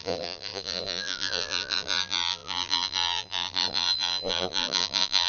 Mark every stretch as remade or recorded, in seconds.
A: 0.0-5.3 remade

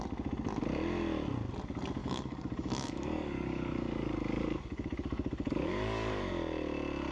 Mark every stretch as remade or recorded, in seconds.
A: 0.0-2.0 recorded; 2.0-6.3 remade; 6.3-7.1 recorded

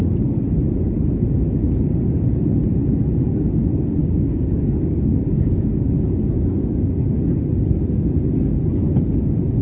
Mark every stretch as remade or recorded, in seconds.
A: 0.0-4.0 recorded; 4.0-7.3 remade; 7.3-9.6 recorded

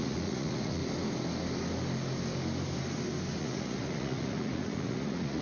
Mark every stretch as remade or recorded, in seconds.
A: 0.0-0.8 remade; 0.8-3.4 recorded; 3.4-5.4 remade